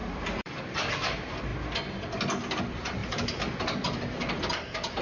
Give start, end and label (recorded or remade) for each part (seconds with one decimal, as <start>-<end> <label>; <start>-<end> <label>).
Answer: 0.0-0.6 remade; 0.6-3.0 recorded; 3.0-5.0 remade